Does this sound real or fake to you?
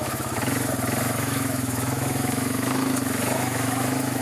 fake